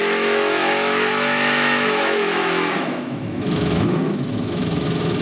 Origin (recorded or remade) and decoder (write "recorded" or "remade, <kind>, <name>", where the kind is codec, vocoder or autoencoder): remade, autoencoder, DAC-VAE